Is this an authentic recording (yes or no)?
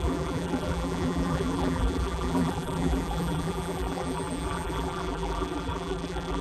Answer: no